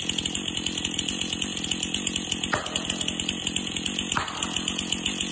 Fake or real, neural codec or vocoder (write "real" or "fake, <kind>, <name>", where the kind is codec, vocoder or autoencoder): real